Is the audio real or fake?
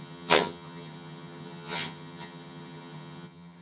fake